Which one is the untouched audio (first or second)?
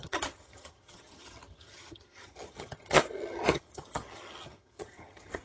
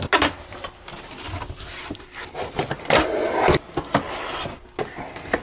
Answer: second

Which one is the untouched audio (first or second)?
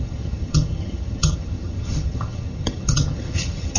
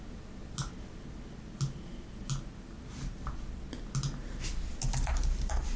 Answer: second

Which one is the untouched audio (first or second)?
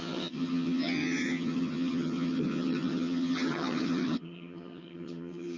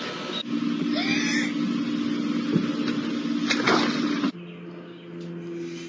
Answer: second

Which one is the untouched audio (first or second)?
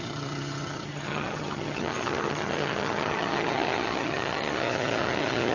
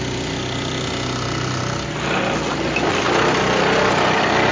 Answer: second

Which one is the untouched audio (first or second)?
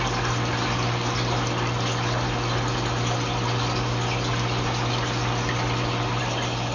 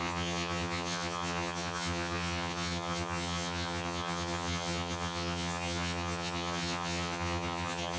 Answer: first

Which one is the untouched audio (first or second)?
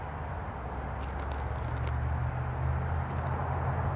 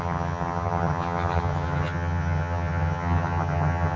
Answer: first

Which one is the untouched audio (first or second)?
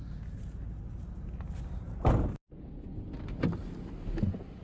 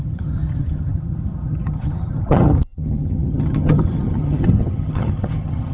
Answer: first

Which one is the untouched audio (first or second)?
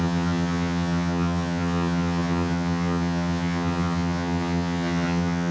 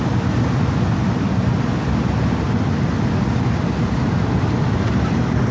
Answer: second